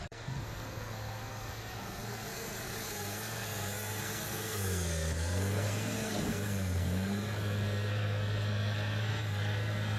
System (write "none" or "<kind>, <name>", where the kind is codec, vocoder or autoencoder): codec, SNAC